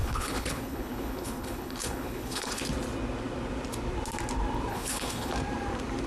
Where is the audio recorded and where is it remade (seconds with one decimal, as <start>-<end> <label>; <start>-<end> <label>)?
0.0-2.6 remade; 2.6-4.7 recorded; 4.7-5.3 remade; 5.3-6.1 recorded